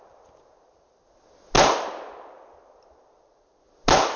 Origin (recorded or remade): recorded